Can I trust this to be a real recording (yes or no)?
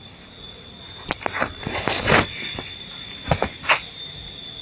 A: no